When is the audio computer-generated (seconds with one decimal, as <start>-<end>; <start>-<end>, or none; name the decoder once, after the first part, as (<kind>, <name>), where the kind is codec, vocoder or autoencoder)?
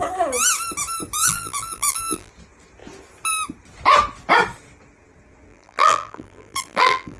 1.2-2.3 (vocoder, BigVGAN v2); 5.5-7.2